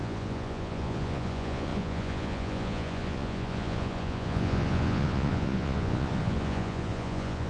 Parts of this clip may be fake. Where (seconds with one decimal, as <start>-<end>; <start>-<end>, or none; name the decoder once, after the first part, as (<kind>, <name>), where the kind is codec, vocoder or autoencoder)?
0.0-7.5 (vocoder, Vocos)